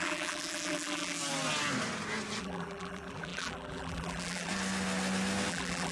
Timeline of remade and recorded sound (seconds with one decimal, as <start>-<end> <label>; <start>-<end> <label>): 0.0-1.2 remade; 1.2-2.4 recorded; 2.4-4.5 remade; 4.5-5.5 recorded; 5.5-5.9 remade